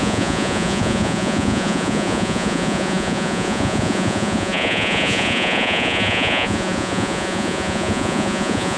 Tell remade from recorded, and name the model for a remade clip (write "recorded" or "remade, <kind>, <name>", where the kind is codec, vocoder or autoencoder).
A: remade, vocoder, Vocos